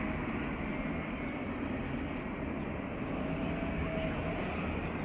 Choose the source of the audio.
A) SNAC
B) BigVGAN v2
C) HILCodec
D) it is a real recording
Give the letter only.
D